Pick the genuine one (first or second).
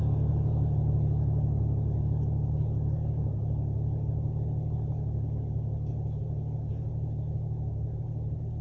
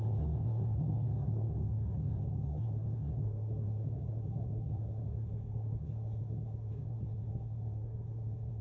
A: first